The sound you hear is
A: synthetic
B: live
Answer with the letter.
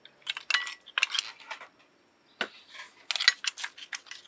B